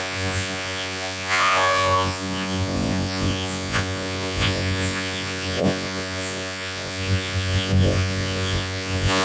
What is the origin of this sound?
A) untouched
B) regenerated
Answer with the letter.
B